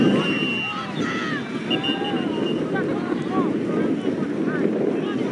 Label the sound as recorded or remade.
recorded